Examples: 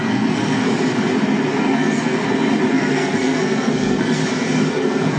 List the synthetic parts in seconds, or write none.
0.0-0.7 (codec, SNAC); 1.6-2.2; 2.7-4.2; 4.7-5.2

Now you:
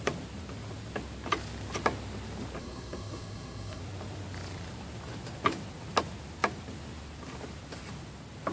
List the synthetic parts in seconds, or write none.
2.6-3.8 (codec, SNAC)

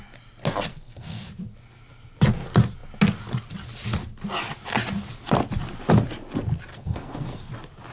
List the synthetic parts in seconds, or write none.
0.7-1.3 (codec, SNAC); 6.7-7.5

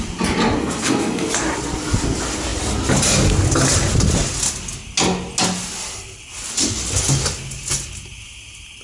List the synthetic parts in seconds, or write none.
0.6-1.3 (codec, SNAC)

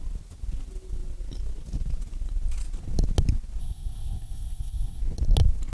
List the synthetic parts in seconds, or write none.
3.6-5.0 (codec, SNAC)